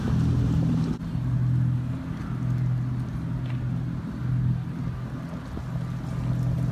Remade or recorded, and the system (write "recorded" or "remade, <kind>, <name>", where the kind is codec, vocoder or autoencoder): recorded